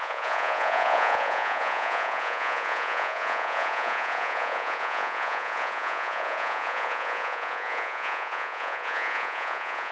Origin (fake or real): fake